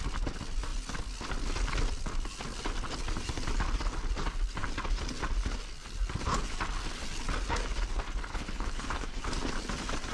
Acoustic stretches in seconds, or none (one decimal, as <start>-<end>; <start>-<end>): 0.0-8.3; 9.2-10.1